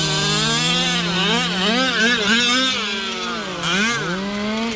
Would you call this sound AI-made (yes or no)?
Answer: no